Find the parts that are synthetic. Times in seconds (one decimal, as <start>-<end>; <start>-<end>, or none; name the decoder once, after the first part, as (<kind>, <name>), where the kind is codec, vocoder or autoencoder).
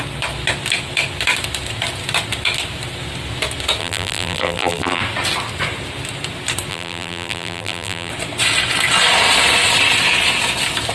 3.8-5.0 (vocoder, BigVGAN v2); 6.7-8.1